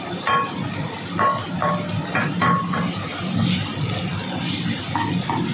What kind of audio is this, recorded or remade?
recorded